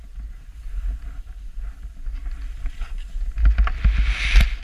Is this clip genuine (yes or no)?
yes